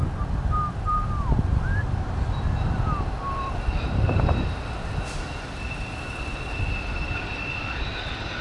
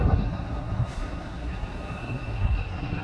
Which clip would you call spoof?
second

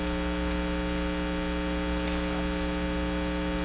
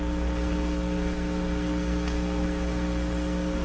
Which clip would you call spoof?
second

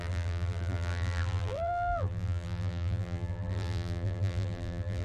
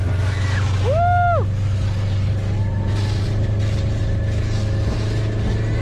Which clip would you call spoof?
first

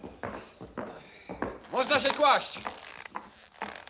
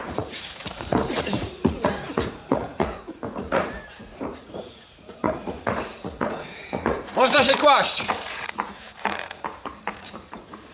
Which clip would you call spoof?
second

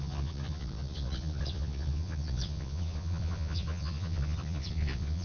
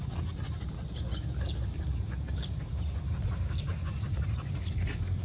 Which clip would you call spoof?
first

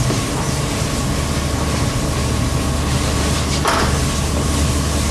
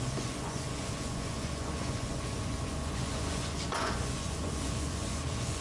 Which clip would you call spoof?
second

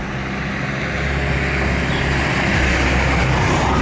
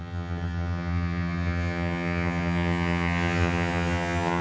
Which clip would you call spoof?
second